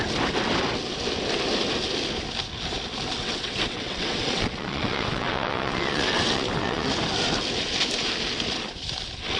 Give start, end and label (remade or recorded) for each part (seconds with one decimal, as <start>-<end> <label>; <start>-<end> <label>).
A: 0.0-3.2 recorded; 3.2-6.9 remade; 6.9-9.4 recorded